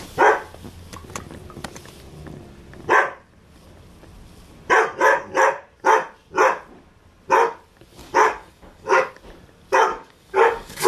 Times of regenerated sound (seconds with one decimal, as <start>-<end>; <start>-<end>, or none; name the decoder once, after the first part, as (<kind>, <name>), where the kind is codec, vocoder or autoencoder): 8.0-9.1 (codec, DAC); 9.9-10.9

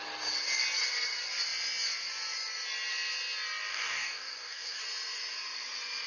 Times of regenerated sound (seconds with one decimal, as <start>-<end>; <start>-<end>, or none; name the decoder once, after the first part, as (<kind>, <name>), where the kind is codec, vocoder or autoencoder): 3.7-4.8 (codec, DAC)

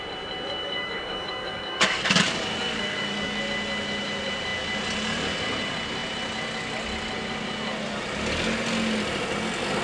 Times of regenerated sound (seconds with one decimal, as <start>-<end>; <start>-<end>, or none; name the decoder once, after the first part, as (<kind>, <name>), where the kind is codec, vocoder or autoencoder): 0.6-3.4 (codec, DAC)

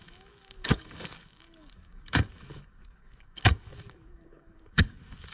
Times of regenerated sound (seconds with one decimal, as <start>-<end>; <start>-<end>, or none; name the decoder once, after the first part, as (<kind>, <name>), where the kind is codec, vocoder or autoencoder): 0.0-5.3 (codec, DAC)

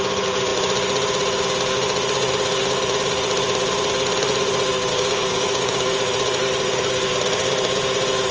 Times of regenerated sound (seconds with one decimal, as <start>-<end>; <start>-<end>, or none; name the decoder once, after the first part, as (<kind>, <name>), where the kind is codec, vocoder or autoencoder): 4.9-5.9 (codec, DAC)

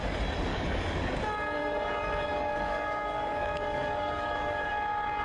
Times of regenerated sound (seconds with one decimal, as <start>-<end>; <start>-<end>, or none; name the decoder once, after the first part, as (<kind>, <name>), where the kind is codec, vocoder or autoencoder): 0.5-1.2 (codec, DAC); 1.6-4.7